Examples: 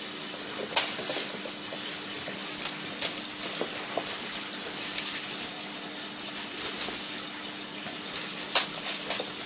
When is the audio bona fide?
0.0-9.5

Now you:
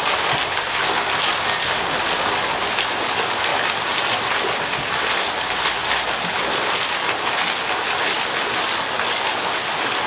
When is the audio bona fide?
0.0-10.1

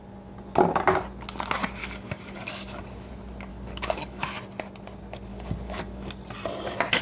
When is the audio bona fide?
0.0-1.8; 3.1-3.5; 4.3-5.3; 6.1-7.0

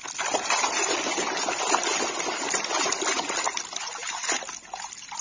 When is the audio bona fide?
0.0-5.2

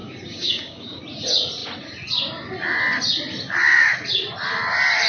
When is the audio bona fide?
1.0-5.1